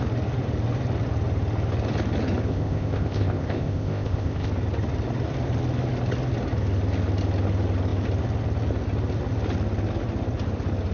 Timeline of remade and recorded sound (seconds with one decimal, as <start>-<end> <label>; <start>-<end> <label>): 0.0-2.5 recorded; 2.5-4.5 remade; 4.5-10.9 recorded

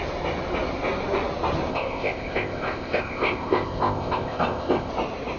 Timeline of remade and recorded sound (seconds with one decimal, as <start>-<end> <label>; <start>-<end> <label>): 0.0-1.7 recorded; 1.7-4.9 remade; 4.9-5.4 recorded